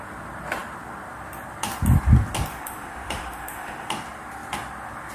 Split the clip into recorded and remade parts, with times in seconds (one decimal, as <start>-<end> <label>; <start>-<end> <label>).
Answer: 0.0-2.5 recorded; 2.5-3.9 remade; 3.9-5.1 recorded